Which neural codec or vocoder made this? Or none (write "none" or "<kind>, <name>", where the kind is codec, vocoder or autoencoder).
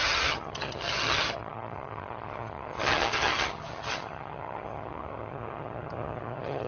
vocoder, HiFi-GAN